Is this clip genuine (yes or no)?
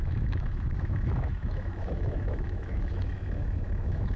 no